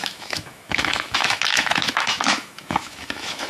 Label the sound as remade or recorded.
remade